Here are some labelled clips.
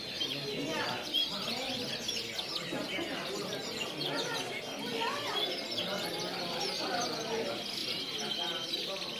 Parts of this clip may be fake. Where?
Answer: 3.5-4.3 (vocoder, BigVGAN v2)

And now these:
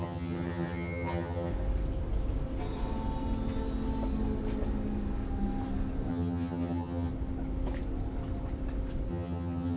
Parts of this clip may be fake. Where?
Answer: 0.0-1.5 (vocoder, HiFi-GAN); 6.1-7.1; 9.1-9.8

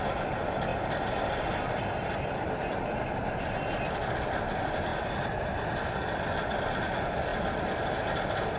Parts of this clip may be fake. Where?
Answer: none